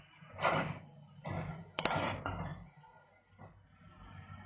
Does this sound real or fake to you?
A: real